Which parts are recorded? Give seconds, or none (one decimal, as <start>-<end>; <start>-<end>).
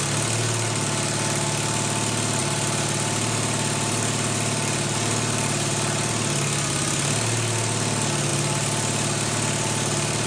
0.0-2.4; 6.1-8.3